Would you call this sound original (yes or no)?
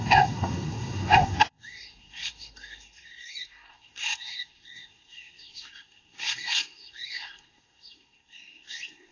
no